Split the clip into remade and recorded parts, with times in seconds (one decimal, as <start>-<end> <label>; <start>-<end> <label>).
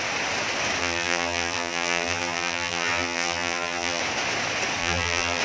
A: 0.0-0.8 recorded; 0.8-4.0 remade; 4.0-4.8 recorded; 4.8-5.4 remade